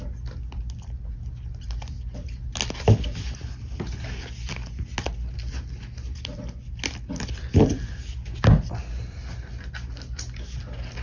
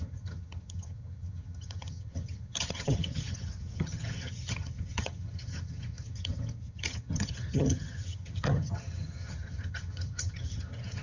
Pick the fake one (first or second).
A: second